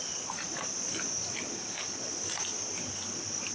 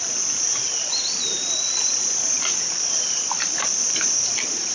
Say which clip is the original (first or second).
first